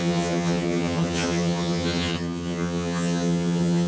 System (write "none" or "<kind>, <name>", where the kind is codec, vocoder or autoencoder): vocoder, HiFi-GAN